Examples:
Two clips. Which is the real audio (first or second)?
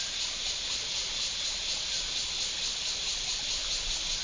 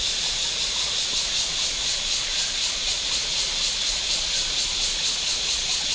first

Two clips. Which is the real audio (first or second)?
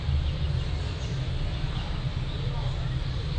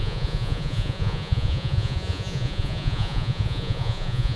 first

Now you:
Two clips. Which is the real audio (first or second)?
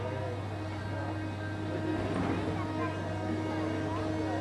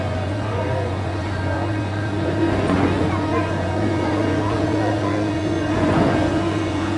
first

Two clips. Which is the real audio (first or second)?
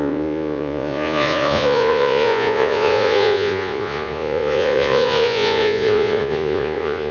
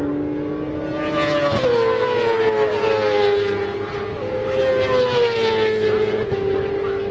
second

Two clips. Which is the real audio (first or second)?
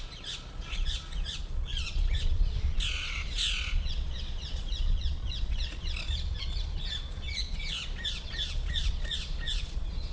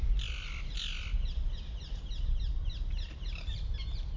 second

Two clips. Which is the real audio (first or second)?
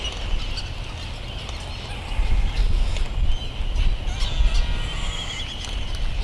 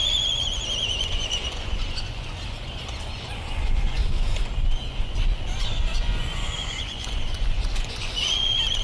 first